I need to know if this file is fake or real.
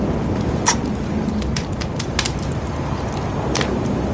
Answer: real